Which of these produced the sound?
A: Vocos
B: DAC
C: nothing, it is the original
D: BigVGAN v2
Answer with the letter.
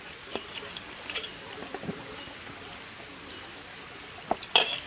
C